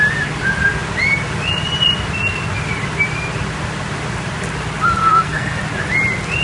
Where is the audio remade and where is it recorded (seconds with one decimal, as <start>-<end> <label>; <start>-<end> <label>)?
0.0-5.0 recorded; 5.0-5.6 remade; 5.6-6.4 recorded